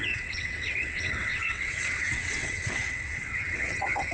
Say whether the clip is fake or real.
fake